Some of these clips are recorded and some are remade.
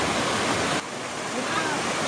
recorded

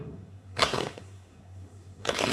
remade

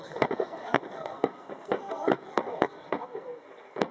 remade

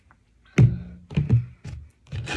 recorded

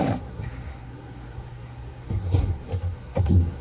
remade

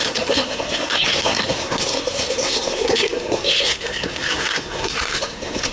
remade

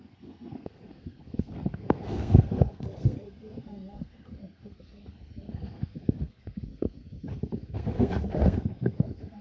remade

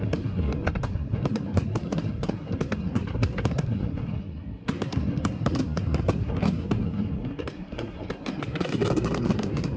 remade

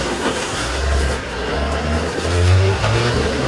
remade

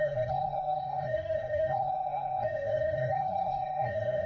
remade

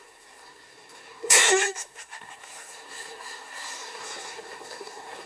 remade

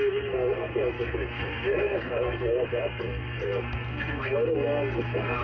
remade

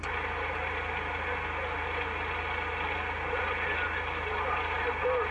recorded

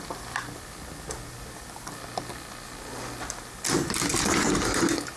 recorded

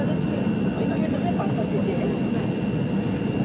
recorded